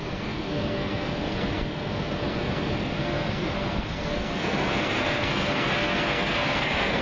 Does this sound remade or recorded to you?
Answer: remade